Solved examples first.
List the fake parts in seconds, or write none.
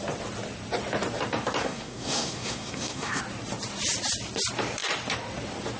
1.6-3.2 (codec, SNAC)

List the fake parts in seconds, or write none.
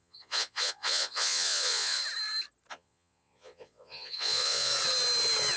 0.0-2.0 (vocoder, Vocos); 2.7-4.7